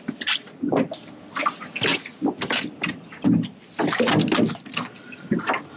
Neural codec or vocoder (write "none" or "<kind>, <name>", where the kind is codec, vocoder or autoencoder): none